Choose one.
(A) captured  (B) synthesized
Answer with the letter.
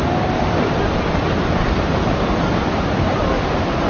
A